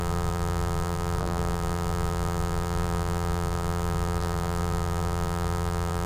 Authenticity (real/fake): fake